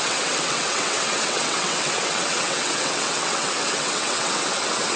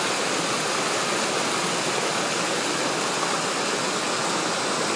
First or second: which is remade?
first